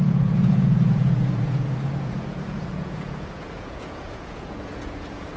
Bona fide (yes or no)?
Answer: no